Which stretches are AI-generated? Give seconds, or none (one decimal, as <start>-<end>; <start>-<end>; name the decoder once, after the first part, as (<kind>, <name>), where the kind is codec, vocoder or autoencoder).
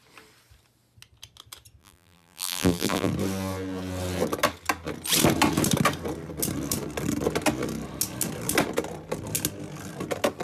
1.8-3.1 (vocoder, BigVGAN v2)